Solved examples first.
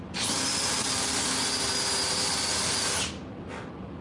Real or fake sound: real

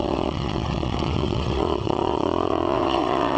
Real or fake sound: fake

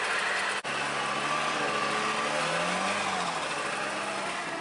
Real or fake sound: real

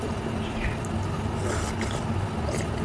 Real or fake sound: real